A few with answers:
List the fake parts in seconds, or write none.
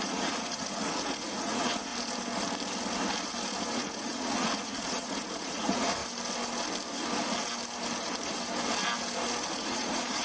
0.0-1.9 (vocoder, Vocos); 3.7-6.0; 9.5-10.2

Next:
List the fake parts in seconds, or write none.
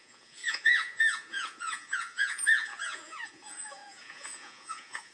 0.0-5.1 (vocoder, Vocos)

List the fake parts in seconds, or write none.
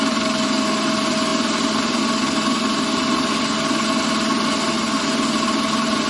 none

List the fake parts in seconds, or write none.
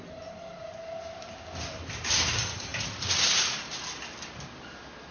none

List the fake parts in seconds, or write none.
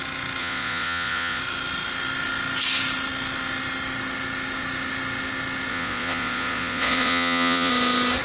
0.4-1.4 (vocoder, Vocos); 5.7-7.7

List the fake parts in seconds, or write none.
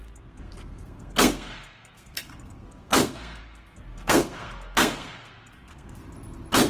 0.0-6.0 (codec, SNAC)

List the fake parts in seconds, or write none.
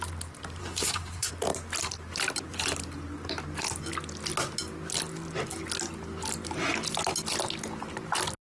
0.6-1.3 (codec, SNAC)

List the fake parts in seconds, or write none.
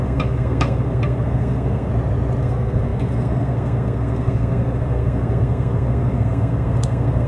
0.0-1.9 (codec, SNAC); 2.4-7.3